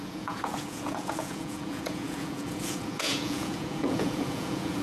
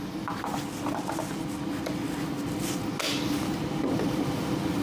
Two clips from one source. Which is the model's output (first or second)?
first